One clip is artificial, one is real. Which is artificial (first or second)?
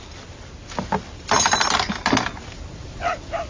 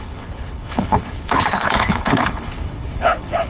second